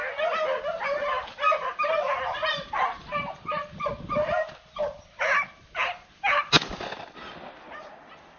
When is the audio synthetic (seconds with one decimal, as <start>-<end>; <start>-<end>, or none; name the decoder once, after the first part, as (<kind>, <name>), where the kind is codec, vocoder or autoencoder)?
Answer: 2.4-3.6 (vocoder, BigVGAN v2)